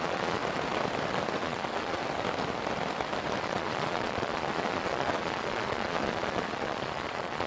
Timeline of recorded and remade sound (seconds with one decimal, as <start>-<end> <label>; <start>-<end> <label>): 0.0-0.4 remade; 0.4-1.4 recorded; 1.4-2.0 remade; 2.0-3.4 recorded; 3.4-7.5 remade